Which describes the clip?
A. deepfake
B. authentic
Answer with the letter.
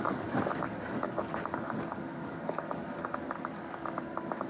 A